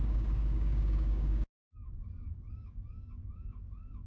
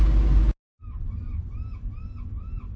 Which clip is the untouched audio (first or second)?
second